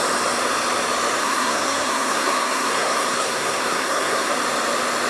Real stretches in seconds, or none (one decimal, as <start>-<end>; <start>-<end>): 0.0-1.2; 4.3-5.1